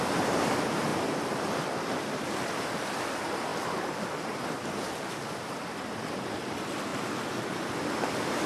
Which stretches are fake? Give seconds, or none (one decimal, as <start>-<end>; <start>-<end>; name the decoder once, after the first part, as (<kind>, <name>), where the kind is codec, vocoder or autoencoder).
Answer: none